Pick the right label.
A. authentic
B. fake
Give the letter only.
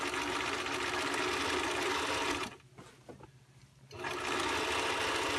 A